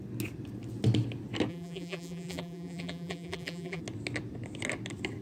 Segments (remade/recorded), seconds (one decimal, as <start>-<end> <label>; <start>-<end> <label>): 0.0-1.5 recorded; 1.5-3.8 remade; 3.8-5.2 recorded